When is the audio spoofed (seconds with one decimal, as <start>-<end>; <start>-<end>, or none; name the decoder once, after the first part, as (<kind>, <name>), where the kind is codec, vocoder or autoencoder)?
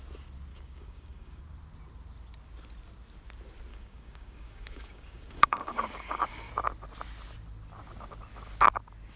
0.5-1.4 (codec, DAC); 3.7-6.5